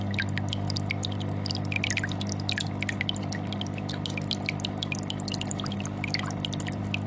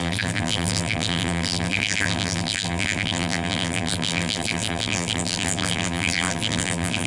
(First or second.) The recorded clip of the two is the first